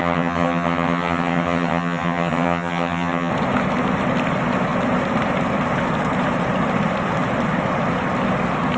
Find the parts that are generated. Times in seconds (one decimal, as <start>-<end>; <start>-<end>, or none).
0.0-3.3